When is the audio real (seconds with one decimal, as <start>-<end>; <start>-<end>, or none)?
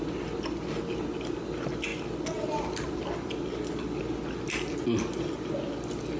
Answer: 0.0-6.2